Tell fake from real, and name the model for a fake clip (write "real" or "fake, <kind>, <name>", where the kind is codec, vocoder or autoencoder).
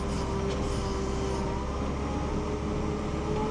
real